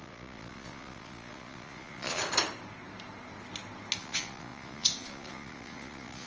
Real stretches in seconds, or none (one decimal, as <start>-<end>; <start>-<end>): 2.2-4.0